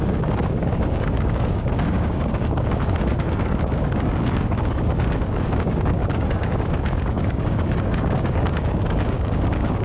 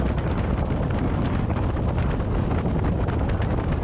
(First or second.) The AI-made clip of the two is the first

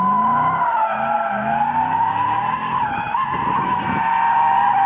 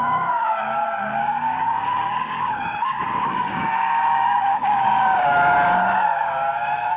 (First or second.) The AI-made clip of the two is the second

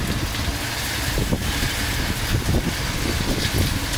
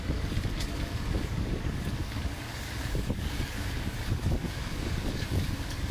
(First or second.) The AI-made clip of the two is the second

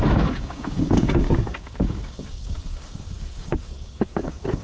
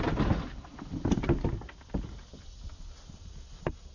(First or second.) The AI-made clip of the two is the first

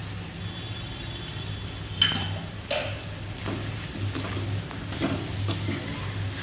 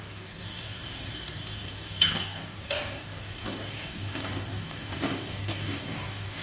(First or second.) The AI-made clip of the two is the second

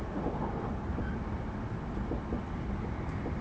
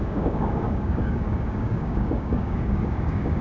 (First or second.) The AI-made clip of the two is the second